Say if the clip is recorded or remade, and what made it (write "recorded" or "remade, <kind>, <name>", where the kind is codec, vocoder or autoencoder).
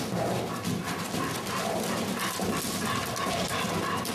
recorded